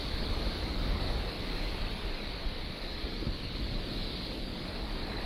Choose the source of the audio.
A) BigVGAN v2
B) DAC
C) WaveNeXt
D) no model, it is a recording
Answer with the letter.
B